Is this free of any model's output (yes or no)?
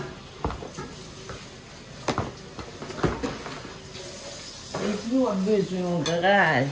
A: yes